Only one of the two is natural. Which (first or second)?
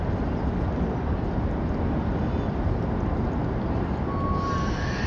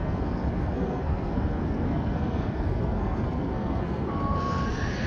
first